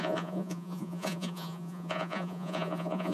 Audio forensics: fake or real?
fake